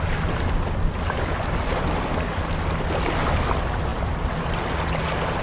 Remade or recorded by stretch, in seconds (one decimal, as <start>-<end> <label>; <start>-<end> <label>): 0.0-5.4 recorded